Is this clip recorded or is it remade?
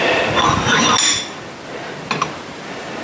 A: recorded